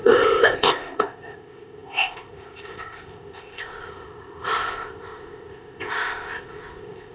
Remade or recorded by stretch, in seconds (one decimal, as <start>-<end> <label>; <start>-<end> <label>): 0.0-7.1 remade